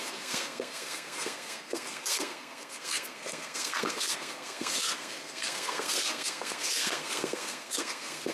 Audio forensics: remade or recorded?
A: remade